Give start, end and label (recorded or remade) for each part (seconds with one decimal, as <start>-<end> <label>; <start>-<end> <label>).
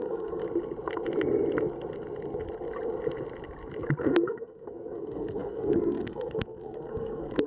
0.0-0.4 remade; 0.4-4.0 recorded; 4.0-7.5 remade